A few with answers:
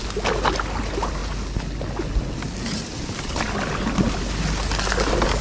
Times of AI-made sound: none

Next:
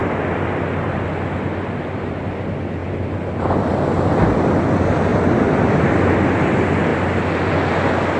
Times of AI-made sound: 1.8-2.8; 3.6-8.2

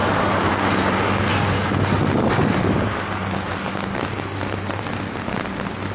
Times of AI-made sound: 0.0-0.5